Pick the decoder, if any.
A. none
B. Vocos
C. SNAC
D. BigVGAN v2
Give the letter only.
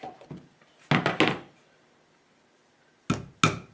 A